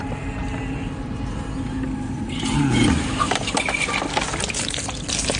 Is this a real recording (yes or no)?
yes